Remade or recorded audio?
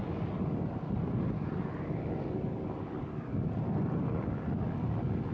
recorded